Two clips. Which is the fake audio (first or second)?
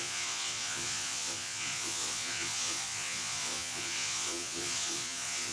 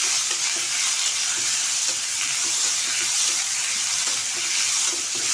first